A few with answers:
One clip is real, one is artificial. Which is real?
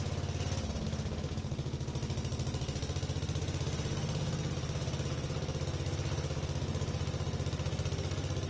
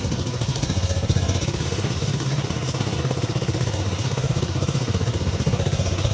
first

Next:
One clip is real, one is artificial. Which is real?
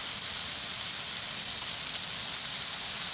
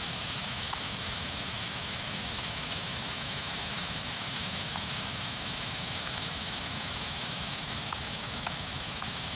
first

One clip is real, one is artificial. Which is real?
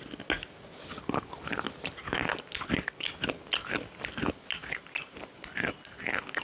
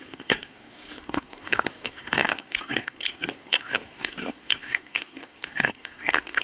first